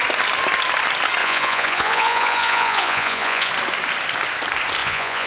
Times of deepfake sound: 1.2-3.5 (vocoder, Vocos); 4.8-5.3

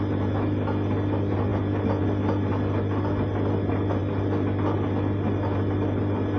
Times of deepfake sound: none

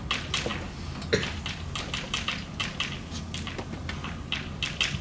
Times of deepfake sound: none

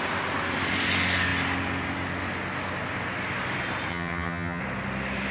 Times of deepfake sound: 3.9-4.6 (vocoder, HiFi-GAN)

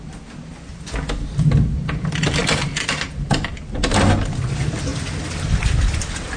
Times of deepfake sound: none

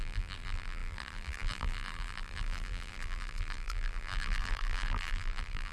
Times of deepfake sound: 0.0-5.7 (vocoder, BigVGAN v2)

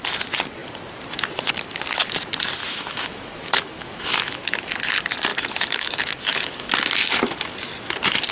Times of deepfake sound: 2.6-4.7 (autoencoder, DAC-VAE); 5.3-6.7

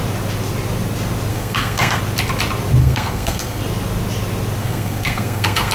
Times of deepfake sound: 1.3-2.0 (codec, SNAC); 2.8-3.6; 4.6-5.7